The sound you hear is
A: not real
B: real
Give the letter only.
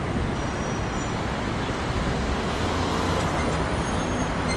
B